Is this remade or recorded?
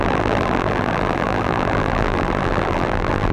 remade